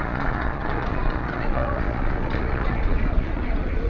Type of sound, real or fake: fake